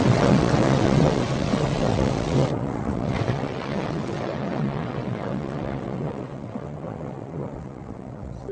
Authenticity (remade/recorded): remade